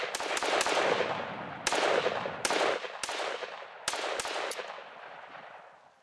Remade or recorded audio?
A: recorded